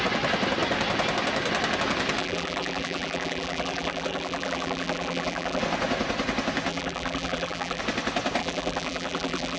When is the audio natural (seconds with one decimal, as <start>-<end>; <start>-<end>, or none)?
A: 0.0-2.2; 5.6-6.7; 7.8-8.4